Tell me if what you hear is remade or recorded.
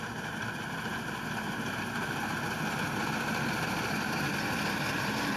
recorded